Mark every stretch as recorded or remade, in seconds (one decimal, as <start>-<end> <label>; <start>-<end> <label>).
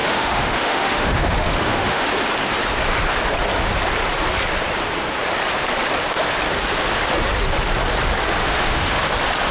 0.0-2.1 remade; 2.1-8.4 recorded; 8.4-9.0 remade; 9.0-9.5 recorded